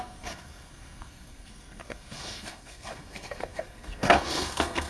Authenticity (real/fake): fake